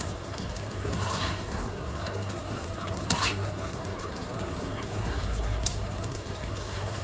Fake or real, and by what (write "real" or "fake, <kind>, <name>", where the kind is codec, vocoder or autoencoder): fake, codec, SNAC